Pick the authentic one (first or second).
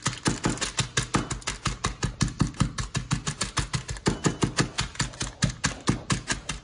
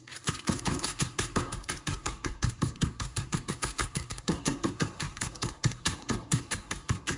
first